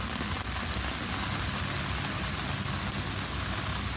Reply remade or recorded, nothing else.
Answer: recorded